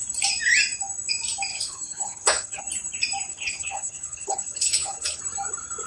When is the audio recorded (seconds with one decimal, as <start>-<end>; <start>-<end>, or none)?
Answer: 0.0-1.5; 2.6-3.3; 5.2-5.9